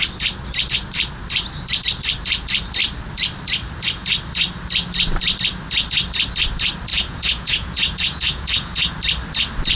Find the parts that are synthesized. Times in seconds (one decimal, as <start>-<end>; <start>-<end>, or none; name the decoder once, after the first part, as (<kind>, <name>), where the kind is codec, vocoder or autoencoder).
6.9-8.9 (vocoder, Vocos)